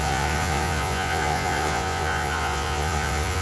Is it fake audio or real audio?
fake